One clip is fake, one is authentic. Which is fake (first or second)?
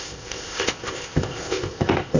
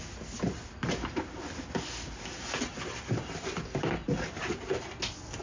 first